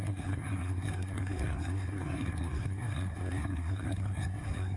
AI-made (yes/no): yes